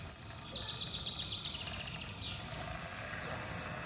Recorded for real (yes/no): yes